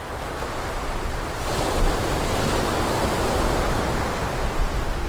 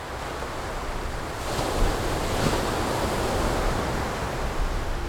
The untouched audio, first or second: second